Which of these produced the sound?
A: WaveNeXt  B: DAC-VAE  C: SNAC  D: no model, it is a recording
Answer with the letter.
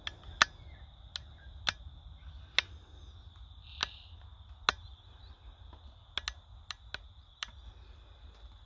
D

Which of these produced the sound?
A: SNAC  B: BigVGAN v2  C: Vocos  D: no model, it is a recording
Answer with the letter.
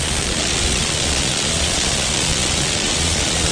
C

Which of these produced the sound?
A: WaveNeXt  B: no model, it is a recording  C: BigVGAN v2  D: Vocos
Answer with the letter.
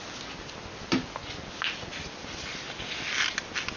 B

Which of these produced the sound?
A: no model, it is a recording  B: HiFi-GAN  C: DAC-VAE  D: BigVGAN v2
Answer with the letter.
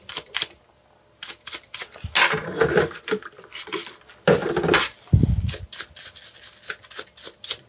A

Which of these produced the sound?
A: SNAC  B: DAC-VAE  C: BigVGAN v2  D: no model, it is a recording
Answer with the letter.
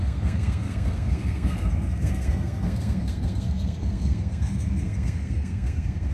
A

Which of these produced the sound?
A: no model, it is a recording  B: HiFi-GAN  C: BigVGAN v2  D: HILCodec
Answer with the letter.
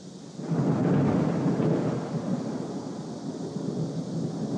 A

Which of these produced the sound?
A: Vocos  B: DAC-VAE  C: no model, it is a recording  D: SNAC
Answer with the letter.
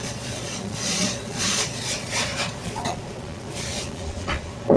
A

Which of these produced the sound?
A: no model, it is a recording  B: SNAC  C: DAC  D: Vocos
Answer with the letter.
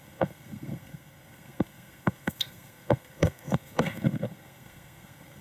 B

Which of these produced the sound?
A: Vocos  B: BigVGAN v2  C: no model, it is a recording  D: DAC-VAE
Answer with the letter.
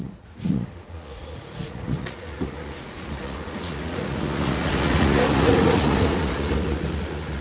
A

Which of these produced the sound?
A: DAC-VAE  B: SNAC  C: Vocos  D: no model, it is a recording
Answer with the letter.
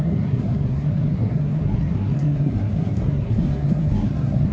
B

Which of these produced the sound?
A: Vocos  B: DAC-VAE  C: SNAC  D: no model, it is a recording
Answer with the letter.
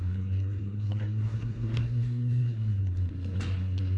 C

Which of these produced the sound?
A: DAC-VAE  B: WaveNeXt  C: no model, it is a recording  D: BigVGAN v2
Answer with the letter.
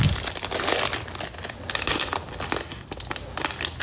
C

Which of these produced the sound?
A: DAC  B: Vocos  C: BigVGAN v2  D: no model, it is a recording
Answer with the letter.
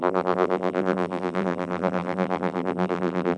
C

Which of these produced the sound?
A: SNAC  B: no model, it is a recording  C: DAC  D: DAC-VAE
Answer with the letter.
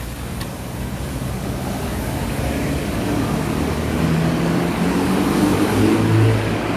C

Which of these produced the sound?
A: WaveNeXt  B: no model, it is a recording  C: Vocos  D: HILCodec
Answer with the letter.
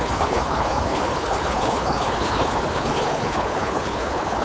D